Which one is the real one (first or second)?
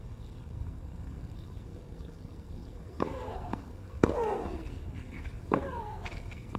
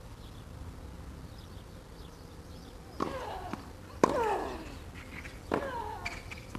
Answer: second